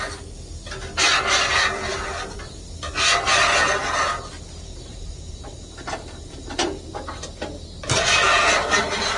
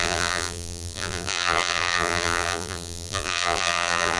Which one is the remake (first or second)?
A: second